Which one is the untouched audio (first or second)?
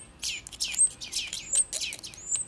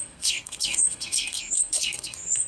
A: first